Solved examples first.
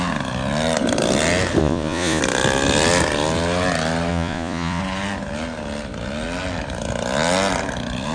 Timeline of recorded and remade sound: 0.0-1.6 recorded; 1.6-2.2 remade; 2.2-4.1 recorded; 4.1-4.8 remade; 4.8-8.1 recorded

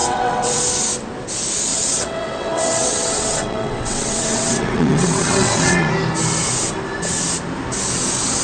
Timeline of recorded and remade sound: 0.0-0.6 remade; 0.6-1.7 recorded; 1.7-5.9 remade; 5.9-8.4 recorded

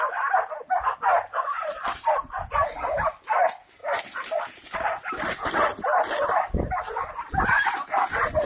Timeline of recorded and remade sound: 0.0-8.5 recorded

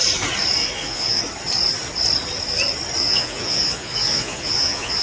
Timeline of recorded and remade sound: 0.0-0.6 recorded; 0.6-1.2 remade; 1.2-3.0 recorded; 3.0-5.0 remade

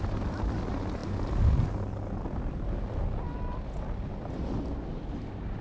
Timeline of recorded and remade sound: 0.0-5.6 recorded

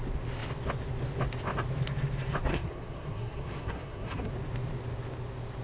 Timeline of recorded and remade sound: 0.0-2.5 recorded; 2.5-4.3 remade; 4.3-5.6 recorded

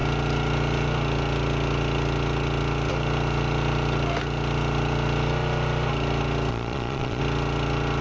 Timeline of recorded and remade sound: 0.0-6.5 recorded; 6.5-7.2 remade; 7.2-8.0 recorded

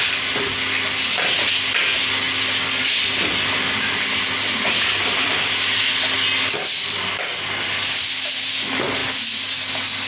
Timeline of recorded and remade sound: 0.0-10.1 recorded